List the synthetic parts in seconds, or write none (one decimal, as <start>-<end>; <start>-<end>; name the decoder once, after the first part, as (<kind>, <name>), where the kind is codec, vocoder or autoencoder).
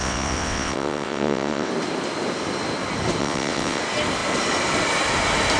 0.0-1.7 (vocoder, WaveNeXt); 3.2-3.8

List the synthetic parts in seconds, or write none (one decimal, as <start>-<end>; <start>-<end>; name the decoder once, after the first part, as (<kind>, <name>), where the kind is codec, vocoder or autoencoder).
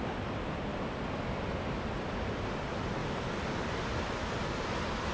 0.0-3.0 (vocoder, BigVGAN v2)